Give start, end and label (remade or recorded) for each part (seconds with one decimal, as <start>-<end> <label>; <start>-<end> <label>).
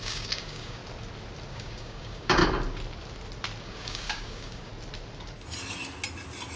0.0-0.8 remade; 0.8-1.5 recorded; 1.5-2.4 remade; 2.4-3.6 recorded; 3.6-4.7 remade; 4.7-6.6 recorded